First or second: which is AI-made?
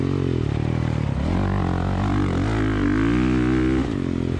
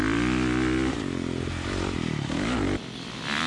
second